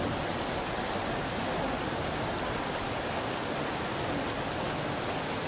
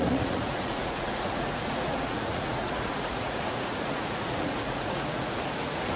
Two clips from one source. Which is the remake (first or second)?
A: second